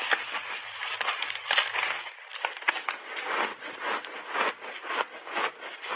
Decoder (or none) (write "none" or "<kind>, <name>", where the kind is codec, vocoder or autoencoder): none